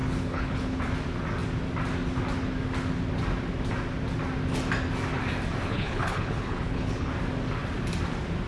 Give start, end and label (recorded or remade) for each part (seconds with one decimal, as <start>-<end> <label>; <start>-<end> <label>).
0.0-0.8 remade; 0.8-5.7 recorded; 5.7-7.1 remade; 7.1-8.5 recorded